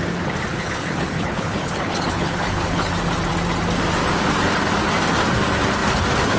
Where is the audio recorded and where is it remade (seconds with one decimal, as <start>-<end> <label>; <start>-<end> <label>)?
0.0-0.5 recorded; 0.5-2.9 remade; 2.9-6.4 recorded